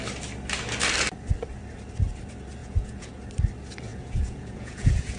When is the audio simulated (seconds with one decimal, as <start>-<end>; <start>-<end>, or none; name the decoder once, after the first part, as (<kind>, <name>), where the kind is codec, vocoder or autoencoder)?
2.6-3.1 (vocoder, Vocos); 3.9-5.2